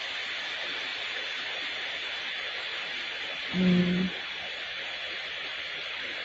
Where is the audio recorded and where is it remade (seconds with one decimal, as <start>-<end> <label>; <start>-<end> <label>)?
0.0-6.2 recorded